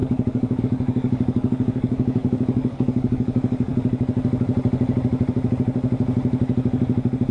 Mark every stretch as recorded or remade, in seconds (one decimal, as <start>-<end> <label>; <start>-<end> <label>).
0.0-3.7 remade; 3.7-7.3 recorded